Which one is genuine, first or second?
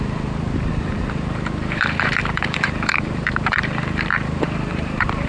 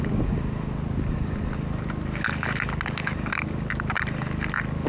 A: second